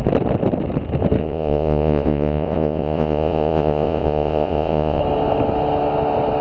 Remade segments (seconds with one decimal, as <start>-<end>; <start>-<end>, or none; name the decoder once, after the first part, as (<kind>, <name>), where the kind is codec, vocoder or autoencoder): 1.2-5.0 (vocoder, Vocos)